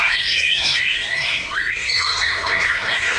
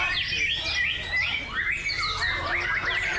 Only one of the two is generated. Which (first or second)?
first